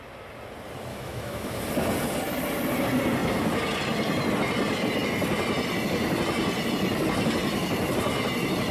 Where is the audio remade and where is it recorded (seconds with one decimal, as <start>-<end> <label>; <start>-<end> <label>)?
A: 0.0-0.9 recorded; 0.9-1.6 remade; 1.6-8.7 recorded